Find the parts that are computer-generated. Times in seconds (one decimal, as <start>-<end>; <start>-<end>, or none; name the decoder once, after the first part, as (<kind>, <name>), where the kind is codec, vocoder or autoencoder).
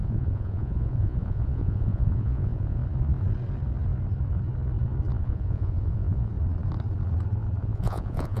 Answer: 0.0-2.8 (vocoder, Vocos); 5.2-6.3; 7.6-8.4